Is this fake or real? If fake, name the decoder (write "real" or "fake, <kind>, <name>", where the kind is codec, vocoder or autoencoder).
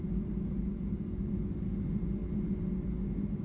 real